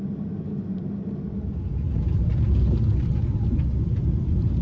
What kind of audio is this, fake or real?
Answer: real